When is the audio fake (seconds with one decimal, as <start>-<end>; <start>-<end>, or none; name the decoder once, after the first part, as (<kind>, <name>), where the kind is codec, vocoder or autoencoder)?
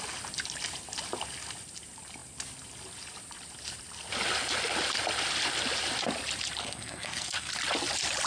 6.6-7.5 (codec, SNAC)